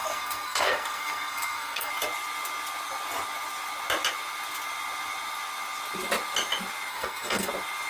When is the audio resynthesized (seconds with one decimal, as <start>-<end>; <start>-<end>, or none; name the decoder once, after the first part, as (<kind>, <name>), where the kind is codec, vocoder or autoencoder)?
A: 0.0-1.9 (codec, SNAC); 6.9-7.5